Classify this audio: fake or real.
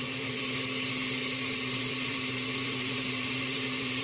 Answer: fake